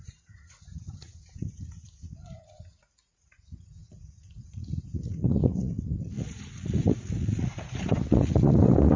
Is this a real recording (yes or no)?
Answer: no